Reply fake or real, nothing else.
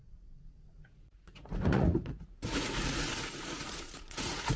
fake